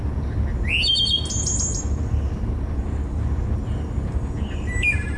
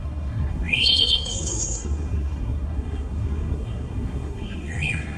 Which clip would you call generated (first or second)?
second